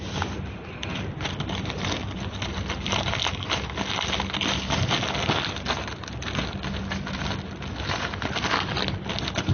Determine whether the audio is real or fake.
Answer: real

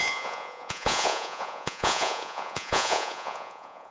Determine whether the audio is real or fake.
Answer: fake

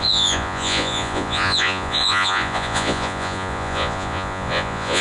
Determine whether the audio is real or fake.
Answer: fake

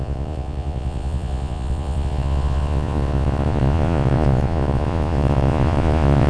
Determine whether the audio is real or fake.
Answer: fake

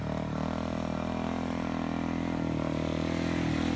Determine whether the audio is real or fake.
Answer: real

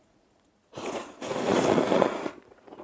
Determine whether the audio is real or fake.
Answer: fake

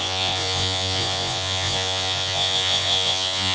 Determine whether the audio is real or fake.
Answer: fake